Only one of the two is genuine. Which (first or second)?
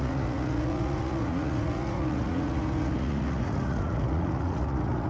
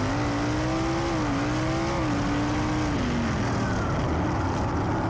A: second